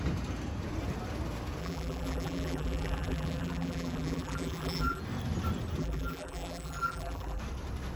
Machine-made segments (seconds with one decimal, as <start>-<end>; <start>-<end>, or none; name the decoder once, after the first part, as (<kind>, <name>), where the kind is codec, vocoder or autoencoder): 1.6-5.0 (vocoder, BigVGAN v2); 5.8-7.4

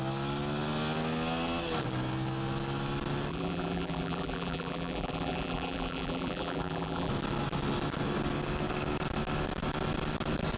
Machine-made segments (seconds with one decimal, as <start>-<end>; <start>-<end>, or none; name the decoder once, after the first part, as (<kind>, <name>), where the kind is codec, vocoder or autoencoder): 3.3-7.1 (vocoder, BigVGAN v2)

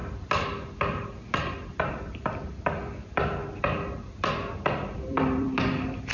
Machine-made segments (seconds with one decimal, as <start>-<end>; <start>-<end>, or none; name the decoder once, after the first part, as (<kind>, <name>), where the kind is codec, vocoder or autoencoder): 0.0-3.4 (vocoder, BigVGAN v2); 4.7-6.1